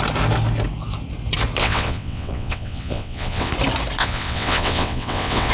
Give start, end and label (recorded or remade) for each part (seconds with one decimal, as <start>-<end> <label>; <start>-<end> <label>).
0.0-1.6 recorded; 1.6-3.5 remade; 3.5-4.0 recorded; 4.0-5.5 remade